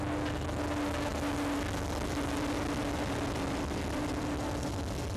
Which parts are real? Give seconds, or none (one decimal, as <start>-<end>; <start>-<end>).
0.0-5.2